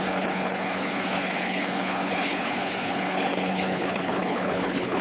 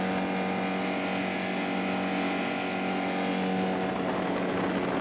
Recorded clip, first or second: second